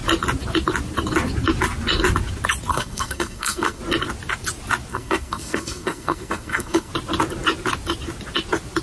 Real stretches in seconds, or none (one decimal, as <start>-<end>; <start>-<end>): 0.0-2.7; 3.8-4.9; 6.9-8.8